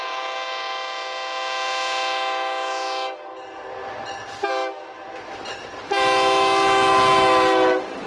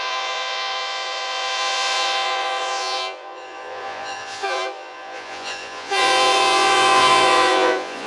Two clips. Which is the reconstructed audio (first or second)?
second